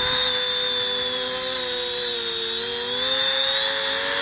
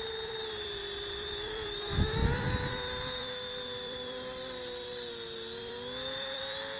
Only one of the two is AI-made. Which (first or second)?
second